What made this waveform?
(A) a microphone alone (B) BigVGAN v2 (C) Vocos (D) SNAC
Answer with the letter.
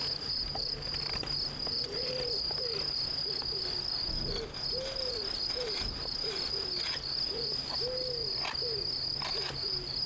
A